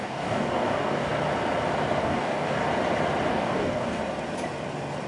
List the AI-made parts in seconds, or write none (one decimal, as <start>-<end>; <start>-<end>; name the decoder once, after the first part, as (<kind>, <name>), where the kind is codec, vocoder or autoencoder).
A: 0.0-1.1 (codec, DAC); 2.0-2.6; 3.3-4.0